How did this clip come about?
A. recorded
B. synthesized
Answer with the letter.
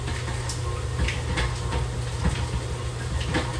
A